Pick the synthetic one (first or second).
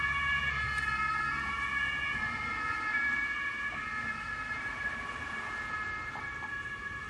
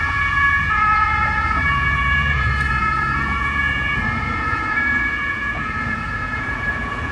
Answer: second